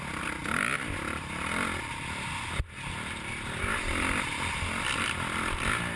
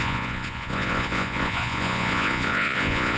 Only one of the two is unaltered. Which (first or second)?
first